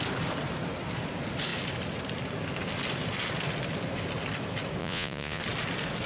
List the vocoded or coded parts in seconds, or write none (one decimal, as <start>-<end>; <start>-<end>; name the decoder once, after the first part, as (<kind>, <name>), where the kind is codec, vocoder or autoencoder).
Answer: 4.8-5.4 (vocoder, Vocos)